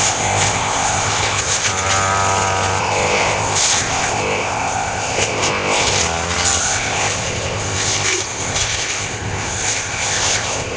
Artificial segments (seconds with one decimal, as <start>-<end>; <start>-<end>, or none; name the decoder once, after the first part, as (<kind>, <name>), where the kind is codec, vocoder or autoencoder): 0.0-1.7 (codec, ZipCodec); 2.8-6.0; 6.6-10.8